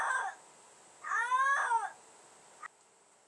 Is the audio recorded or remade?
recorded